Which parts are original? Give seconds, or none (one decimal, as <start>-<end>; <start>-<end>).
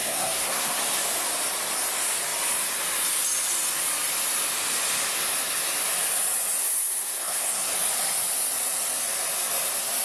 0.8-6.6; 7.7-10.0